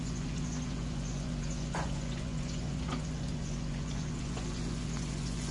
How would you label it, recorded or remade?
remade